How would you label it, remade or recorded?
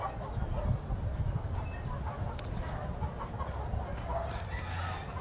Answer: recorded